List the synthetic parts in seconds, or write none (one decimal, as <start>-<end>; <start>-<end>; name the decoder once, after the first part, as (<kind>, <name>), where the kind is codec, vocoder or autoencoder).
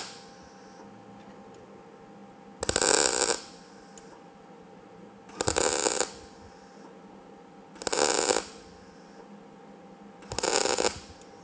none